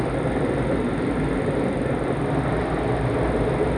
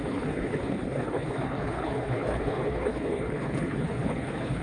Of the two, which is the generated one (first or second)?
second